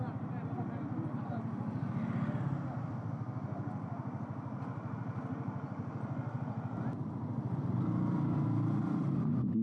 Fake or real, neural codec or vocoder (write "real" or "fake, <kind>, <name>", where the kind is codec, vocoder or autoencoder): real